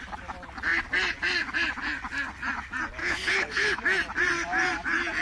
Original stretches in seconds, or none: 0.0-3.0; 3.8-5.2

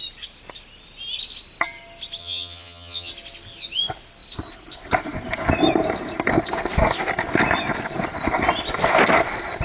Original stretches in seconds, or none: 0.0-2.2; 3.1-9.6

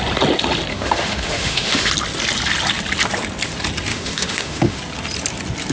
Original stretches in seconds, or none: 0.0-0.7; 1.9-3.9; 4.8-5.7